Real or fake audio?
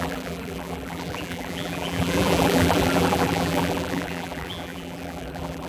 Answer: fake